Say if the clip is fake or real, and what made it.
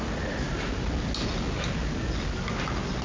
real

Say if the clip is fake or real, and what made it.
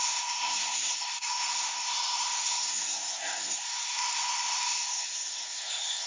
fake, codec, SNAC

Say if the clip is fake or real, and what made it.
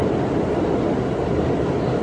real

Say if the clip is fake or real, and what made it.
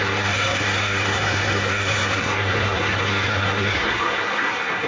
fake, codec, SNAC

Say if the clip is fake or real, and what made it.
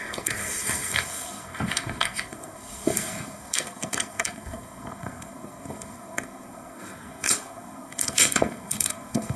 fake, codec, SNAC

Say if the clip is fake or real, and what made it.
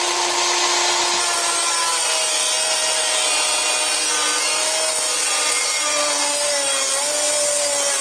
real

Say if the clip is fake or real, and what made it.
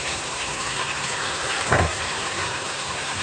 fake, codec, SNAC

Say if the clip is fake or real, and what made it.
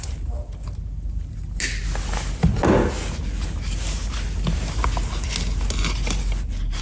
real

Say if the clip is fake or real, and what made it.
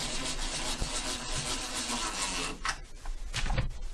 real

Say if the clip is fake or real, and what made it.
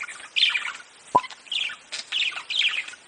real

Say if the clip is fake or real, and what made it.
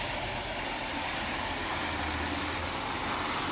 real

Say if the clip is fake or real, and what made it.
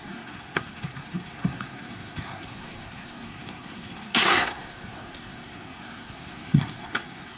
fake, codec, SNAC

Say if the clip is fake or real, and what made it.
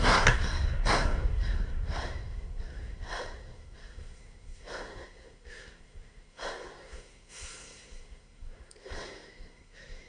fake, codec, SNAC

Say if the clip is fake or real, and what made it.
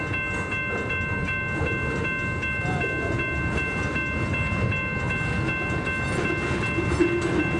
real